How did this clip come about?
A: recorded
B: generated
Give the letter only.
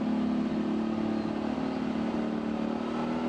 A